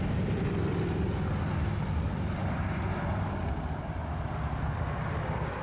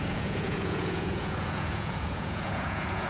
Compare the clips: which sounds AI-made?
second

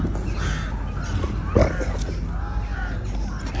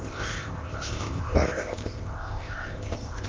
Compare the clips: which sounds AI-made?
second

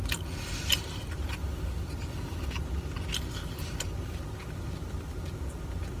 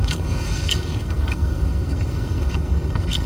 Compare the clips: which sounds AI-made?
second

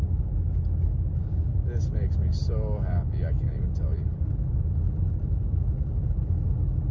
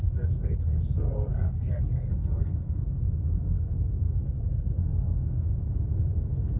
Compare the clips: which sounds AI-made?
second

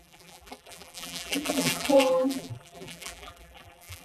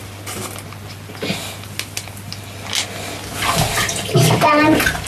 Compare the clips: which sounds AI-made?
first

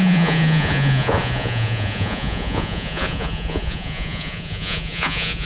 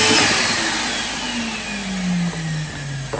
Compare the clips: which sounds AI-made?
first